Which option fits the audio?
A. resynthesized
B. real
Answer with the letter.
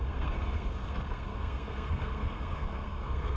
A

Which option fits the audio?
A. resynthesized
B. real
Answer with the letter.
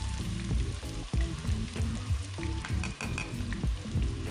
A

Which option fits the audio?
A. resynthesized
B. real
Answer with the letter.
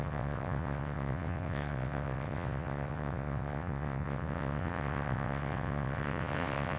A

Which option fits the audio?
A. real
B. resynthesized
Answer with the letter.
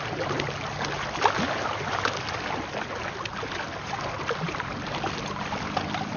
A